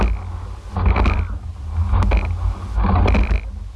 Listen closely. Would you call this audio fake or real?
real